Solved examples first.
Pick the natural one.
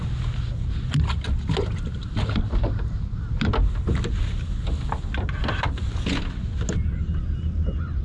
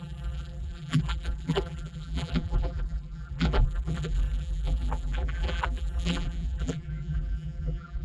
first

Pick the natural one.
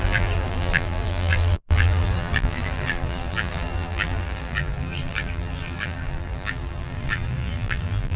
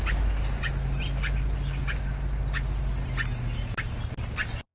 second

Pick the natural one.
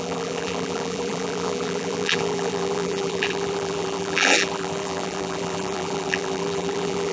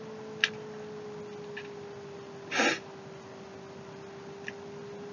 second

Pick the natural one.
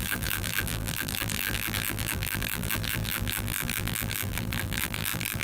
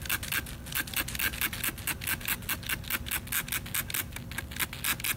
second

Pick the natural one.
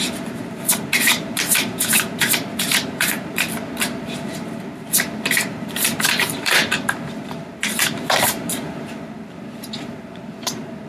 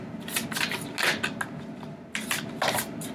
second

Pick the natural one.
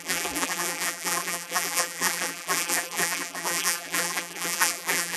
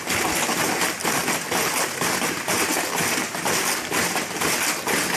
second